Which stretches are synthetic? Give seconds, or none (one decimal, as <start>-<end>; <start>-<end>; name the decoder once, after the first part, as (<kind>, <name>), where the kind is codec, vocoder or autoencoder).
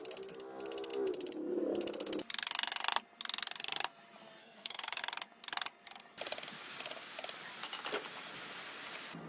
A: 4.4-5.0 (codec, SNAC)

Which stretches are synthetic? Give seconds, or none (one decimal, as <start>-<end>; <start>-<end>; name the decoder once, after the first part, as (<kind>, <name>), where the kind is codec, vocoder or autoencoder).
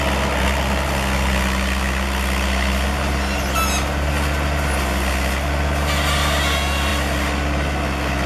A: none